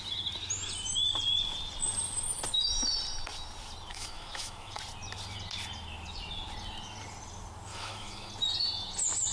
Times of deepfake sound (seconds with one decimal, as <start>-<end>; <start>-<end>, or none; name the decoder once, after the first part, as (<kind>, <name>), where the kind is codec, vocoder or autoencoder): 3.9-4.8 (autoencoder, DAC-VAE); 7.7-8.3